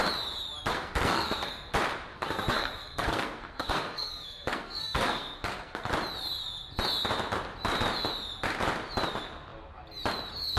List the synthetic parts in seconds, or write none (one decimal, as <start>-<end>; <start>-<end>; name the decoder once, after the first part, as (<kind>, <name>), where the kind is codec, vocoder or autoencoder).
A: 0.7-1.7 (codec, SNAC); 2.1-5.9